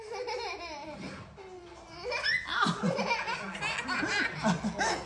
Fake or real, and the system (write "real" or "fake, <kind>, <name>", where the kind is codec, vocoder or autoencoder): real